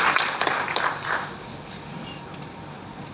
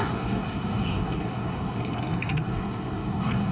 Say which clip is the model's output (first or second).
second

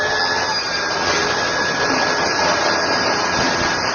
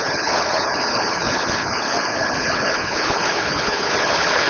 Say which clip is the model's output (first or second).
second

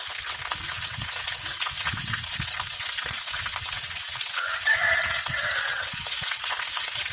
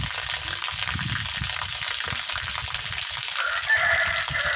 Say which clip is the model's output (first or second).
first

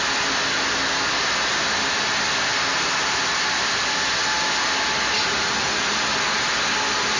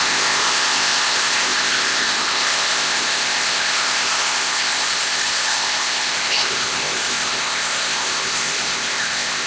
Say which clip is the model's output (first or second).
second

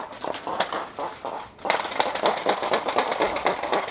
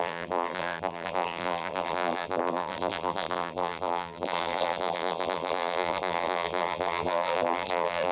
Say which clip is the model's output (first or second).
second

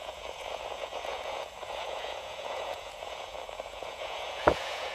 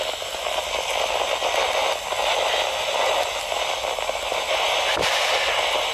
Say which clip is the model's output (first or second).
first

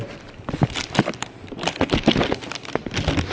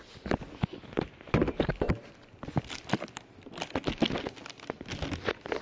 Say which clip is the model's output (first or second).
first